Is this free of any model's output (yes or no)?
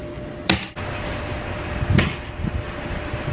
yes